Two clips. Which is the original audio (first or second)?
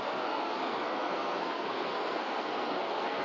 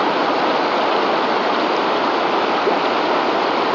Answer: second